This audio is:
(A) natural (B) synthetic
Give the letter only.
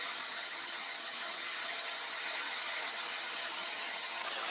B